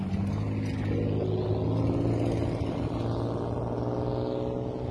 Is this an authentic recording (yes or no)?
yes